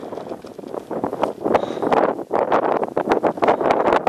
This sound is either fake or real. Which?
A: real